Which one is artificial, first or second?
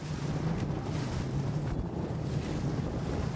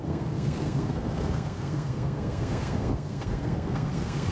second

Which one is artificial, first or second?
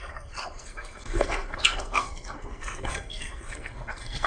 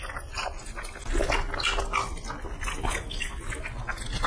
first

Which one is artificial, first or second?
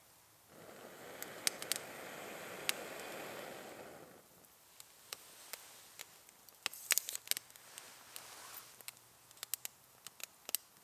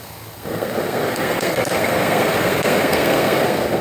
second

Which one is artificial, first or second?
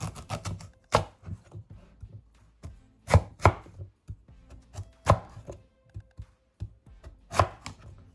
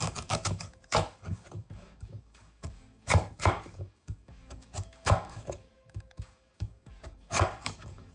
second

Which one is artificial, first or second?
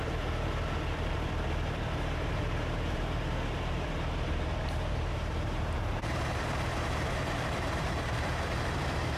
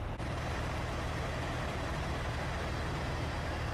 first